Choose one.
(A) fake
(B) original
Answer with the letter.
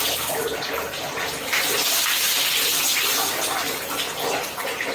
B